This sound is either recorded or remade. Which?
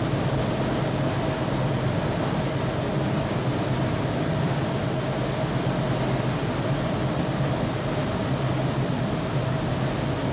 recorded